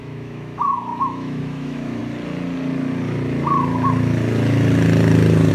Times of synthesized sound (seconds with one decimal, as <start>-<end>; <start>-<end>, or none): 0.0-2.0